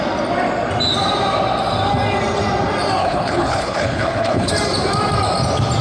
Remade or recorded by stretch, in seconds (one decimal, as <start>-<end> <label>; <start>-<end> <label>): 0.0-3.0 recorded; 3.0-4.5 remade; 4.5-5.8 recorded